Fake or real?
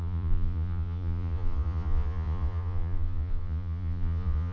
fake